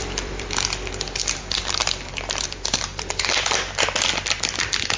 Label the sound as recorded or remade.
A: remade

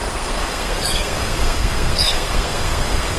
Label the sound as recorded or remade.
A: remade